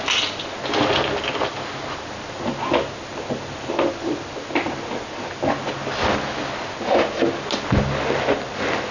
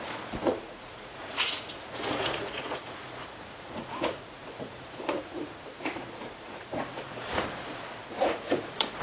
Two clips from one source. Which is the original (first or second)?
first